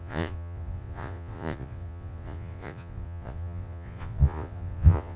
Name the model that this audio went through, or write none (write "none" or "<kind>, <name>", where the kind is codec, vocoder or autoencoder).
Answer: vocoder, Vocos